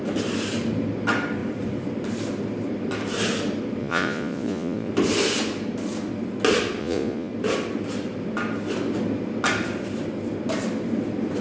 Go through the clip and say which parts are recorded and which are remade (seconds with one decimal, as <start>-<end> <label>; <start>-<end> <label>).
0.0-3.8 recorded; 3.8-4.9 remade; 4.9-6.8 recorded; 6.8-7.3 remade; 7.3-11.4 recorded

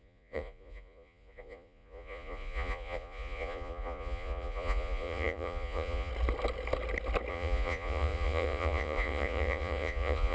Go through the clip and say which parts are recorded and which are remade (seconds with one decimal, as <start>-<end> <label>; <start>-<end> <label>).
0.0-6.1 remade; 6.1-7.3 recorded; 7.3-10.3 remade

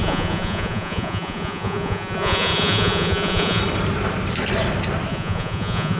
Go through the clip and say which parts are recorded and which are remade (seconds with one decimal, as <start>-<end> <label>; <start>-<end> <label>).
0.0-3.6 remade; 3.6-5.1 recorded; 5.1-6.0 remade

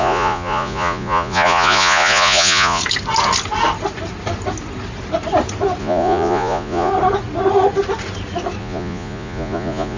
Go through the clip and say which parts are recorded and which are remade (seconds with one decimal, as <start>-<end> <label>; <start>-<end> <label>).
0.0-2.8 remade; 2.8-5.8 recorded; 5.8-6.9 remade; 6.9-8.6 recorded; 8.6-10.0 remade